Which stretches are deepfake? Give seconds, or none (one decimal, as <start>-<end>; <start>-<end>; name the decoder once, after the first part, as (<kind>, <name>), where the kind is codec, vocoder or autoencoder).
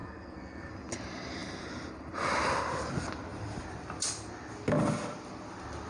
0.0-0.7 (codec, SNAC)